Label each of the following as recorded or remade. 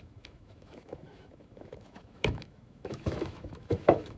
remade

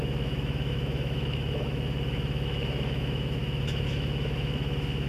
remade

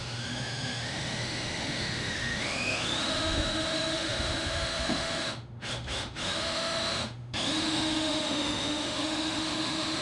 remade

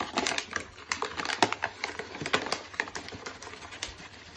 recorded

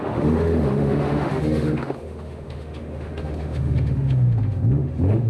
remade